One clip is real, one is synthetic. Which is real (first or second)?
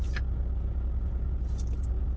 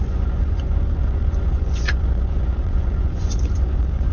first